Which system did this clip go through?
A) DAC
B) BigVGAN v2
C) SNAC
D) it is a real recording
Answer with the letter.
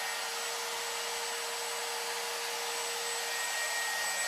D